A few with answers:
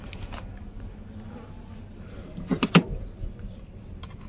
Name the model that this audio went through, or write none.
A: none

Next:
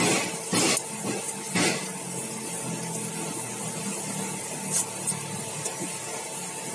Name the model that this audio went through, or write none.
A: none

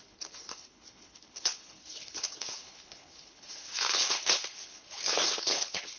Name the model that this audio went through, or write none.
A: codec, HILCodec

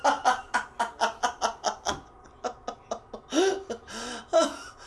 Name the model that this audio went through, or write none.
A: none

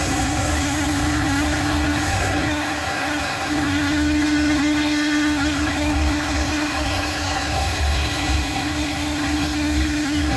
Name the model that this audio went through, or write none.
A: codec, SNAC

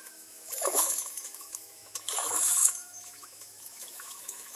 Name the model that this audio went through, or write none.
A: autoencoder, DAC-VAE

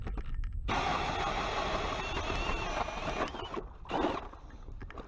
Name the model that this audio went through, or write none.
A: none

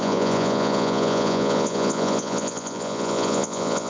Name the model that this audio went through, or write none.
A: vocoder, Vocos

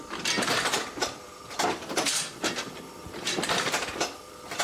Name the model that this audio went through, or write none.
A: vocoder, BigVGAN v2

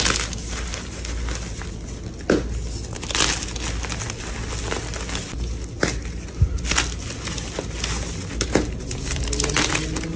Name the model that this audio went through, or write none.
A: none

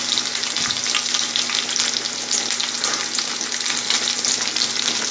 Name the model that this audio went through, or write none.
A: none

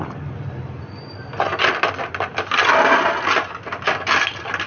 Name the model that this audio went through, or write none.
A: none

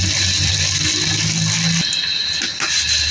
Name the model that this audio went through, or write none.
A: none